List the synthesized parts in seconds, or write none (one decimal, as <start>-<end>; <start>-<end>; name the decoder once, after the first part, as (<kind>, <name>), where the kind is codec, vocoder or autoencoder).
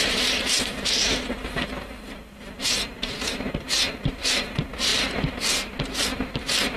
4.9-5.7 (vocoder, BigVGAN v2)